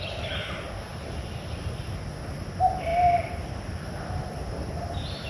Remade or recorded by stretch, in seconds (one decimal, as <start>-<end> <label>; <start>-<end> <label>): 0.0-0.9 recorded; 0.9-2.3 remade; 2.3-2.9 recorded; 2.9-4.3 remade; 4.3-5.3 recorded